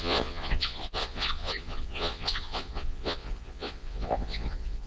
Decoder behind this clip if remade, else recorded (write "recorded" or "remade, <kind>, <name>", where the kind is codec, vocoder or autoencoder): remade, vocoder, Vocos